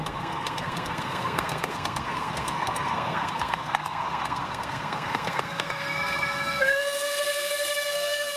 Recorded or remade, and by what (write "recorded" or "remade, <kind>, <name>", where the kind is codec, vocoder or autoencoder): remade, codec, SNAC